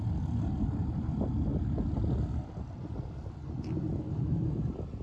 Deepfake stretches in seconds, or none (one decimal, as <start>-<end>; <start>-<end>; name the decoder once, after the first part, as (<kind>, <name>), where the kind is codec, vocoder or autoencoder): none